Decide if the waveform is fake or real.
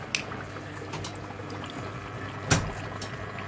real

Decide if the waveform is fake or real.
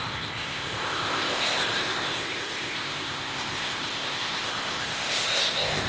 fake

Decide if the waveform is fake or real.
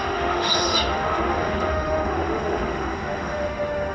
fake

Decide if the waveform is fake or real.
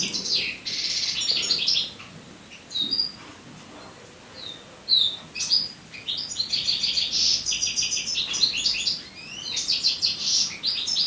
real